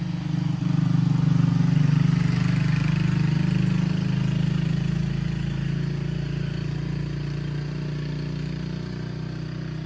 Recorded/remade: recorded